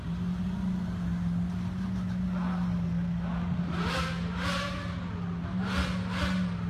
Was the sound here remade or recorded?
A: recorded